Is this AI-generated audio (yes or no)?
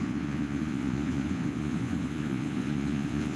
yes